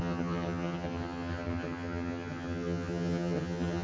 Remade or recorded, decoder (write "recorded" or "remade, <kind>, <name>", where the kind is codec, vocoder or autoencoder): remade, vocoder, HiFi-GAN